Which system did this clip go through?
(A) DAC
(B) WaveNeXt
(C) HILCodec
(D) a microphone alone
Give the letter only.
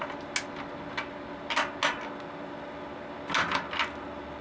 D